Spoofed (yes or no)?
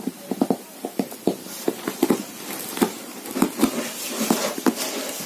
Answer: yes